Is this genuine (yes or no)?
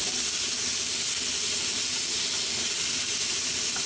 yes